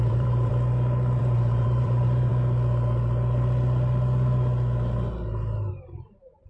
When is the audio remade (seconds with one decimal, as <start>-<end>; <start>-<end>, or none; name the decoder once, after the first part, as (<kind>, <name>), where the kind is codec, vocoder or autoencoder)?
0.0-0.5 (vocoder, BigVGAN v2); 1.2-2.3; 5.7-6.5